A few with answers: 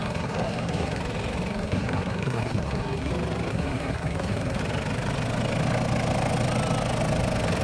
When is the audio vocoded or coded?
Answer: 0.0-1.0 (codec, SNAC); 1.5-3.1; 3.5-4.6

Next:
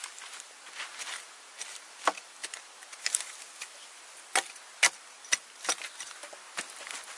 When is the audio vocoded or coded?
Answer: none

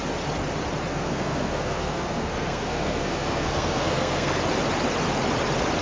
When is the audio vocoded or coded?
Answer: 0.9-4.4 (codec, SNAC)